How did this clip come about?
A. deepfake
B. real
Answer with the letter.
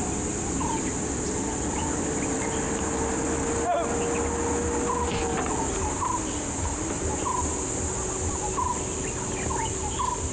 B